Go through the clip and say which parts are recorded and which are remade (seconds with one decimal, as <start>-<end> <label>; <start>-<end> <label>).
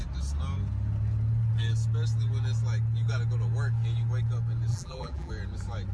0.0-4.7 recorded; 4.7-5.3 remade; 5.3-5.9 recorded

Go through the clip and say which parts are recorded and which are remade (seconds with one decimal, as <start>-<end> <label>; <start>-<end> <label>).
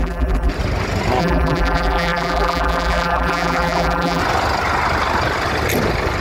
0.0-0.5 remade; 0.5-1.2 recorded; 1.2-4.2 remade; 4.2-6.2 recorded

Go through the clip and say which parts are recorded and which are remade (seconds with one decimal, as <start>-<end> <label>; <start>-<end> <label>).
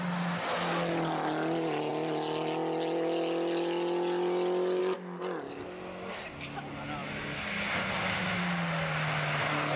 0.0-9.8 recorded